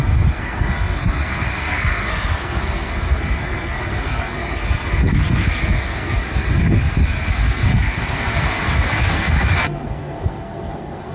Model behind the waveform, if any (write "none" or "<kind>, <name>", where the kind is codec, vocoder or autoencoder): codec, SNAC